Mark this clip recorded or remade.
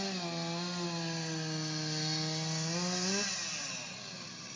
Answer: recorded